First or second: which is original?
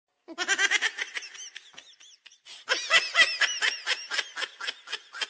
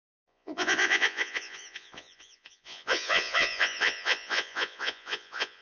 first